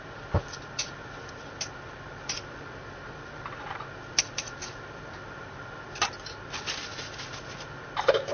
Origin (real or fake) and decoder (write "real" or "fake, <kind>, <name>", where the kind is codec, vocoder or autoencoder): real